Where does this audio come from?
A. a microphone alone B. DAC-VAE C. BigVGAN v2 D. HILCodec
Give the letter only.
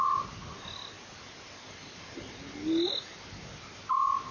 A